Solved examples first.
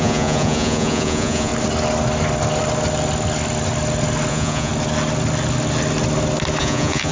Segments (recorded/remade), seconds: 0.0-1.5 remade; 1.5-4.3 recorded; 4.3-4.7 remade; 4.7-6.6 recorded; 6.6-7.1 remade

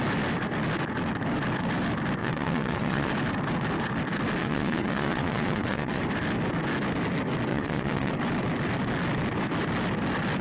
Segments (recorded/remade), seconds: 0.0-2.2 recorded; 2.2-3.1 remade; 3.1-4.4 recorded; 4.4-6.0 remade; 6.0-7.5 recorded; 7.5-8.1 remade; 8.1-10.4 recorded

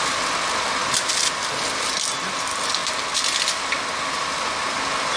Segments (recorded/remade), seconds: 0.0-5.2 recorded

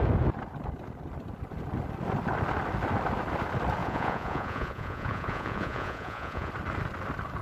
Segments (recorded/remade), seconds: 0.0-3.8 recorded; 3.8-6.5 remade; 6.5-7.4 recorded

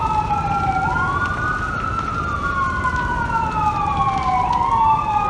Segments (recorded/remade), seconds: 0.0-5.3 recorded

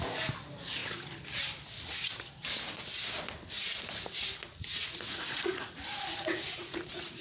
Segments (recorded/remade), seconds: 0.0-4.7 recorded; 4.7-7.2 remade